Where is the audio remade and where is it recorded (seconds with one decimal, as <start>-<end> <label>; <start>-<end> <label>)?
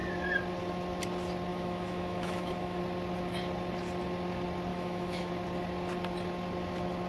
0.0-1.5 recorded; 1.5-2.8 remade; 2.8-4.7 recorded; 4.7-5.3 remade; 5.3-7.1 recorded